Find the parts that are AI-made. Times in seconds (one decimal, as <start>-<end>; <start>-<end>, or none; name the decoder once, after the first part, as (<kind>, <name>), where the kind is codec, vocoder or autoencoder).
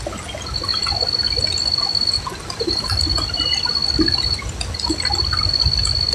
none